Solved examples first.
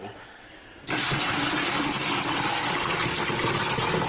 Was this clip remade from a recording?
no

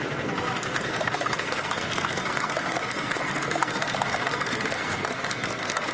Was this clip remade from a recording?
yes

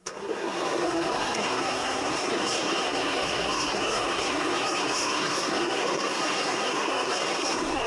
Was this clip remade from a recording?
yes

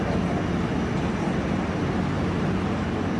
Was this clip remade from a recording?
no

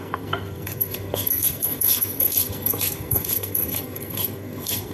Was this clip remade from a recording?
yes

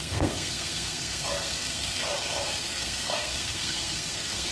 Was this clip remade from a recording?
yes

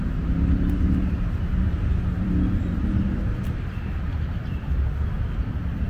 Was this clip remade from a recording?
no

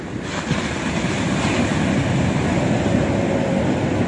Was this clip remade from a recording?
no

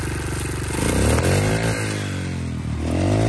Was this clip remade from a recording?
no